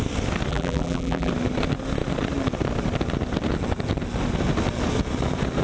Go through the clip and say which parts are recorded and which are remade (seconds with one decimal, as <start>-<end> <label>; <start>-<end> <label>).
0.0-0.5 recorded; 0.5-1.3 remade; 1.3-5.6 recorded